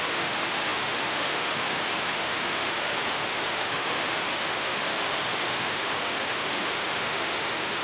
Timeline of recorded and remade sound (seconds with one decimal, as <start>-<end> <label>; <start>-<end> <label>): 0.0-7.8 remade